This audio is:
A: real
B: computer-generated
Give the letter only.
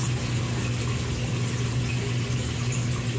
A